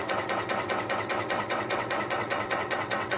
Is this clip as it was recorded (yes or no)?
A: no